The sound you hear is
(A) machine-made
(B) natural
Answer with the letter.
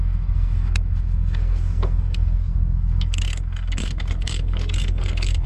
A